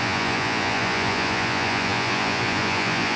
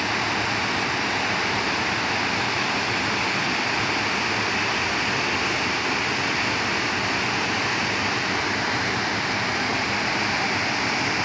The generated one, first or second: first